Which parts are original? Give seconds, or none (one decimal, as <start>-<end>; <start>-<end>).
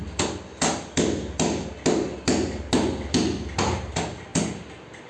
0.0-5.1